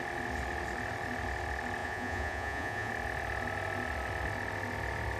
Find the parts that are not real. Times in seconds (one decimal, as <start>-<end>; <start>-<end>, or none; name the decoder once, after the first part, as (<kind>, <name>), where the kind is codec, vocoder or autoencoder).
1.8-2.9 (vocoder, Vocos)